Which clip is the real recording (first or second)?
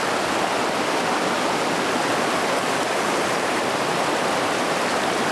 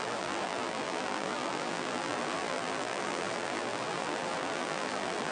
first